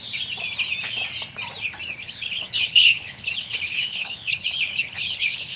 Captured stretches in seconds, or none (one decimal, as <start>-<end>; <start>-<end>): 0.0-2.0